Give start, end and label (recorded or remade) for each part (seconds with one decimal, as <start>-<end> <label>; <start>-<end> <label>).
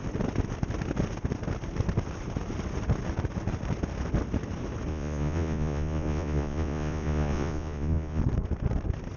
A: 0.0-4.9 recorded; 4.9-8.2 remade; 8.2-9.2 recorded